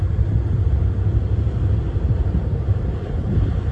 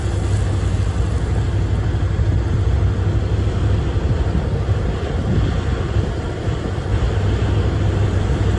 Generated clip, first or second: first